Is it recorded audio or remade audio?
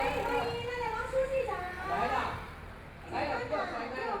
remade